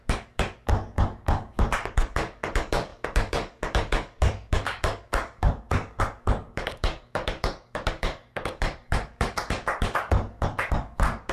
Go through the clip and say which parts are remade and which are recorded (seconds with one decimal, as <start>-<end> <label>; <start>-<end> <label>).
0.0-11.3 remade